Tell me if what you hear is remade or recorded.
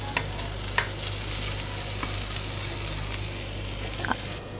recorded